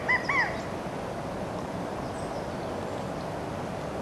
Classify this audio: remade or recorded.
recorded